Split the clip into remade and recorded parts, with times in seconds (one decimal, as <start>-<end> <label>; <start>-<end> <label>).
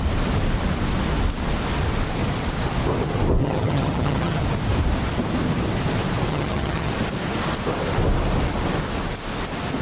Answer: 0.0-3.4 recorded; 3.4-4.4 remade; 4.4-6.3 recorded; 6.3-6.9 remade; 6.9-9.8 recorded